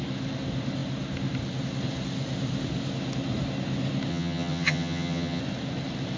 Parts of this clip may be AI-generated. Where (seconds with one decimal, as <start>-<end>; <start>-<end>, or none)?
4.1-5.4